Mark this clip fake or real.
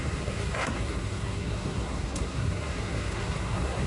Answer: fake